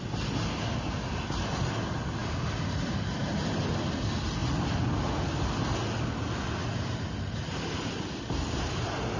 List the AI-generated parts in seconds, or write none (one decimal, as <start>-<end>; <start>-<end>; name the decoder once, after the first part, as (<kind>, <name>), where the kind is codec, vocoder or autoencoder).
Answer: none